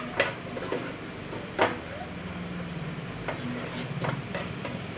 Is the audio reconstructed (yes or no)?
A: no